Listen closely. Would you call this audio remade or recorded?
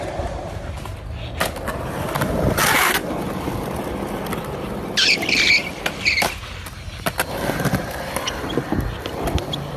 recorded